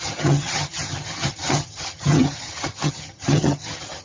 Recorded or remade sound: remade